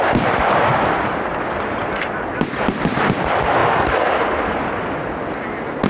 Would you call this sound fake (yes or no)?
no